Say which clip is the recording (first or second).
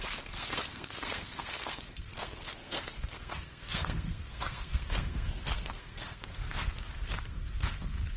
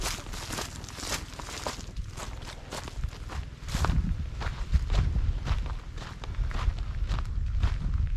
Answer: second